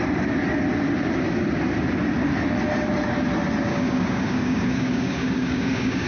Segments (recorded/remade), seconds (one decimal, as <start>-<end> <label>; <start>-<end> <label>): 0.0-3.7 recorded; 3.7-6.1 remade